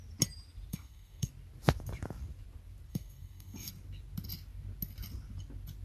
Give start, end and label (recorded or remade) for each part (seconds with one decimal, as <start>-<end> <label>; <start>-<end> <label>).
0.0-0.7 recorded; 0.7-1.3 remade; 1.3-2.9 recorded; 2.9-3.7 remade; 3.7-5.8 recorded